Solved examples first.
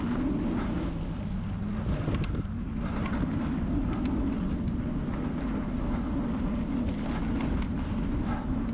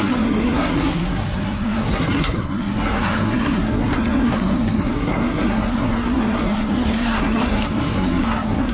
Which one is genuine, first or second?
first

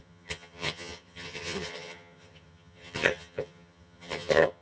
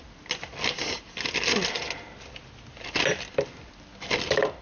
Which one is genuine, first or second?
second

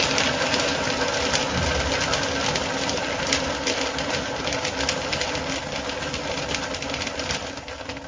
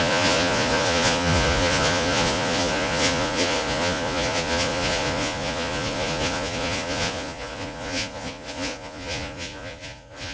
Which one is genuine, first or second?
first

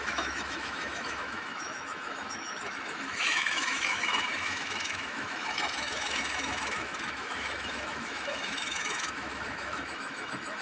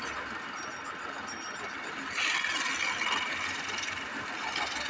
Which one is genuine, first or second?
second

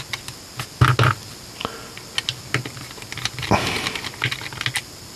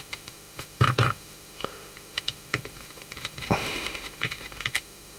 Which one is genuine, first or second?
first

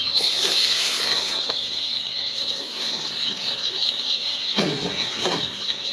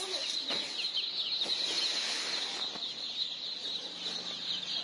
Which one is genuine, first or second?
second